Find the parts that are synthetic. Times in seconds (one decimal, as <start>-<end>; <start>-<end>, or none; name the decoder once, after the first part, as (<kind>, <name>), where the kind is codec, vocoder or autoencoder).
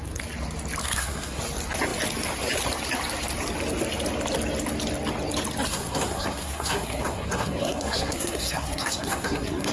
0.8-1.4 (codec, SNAC); 5.7-9.7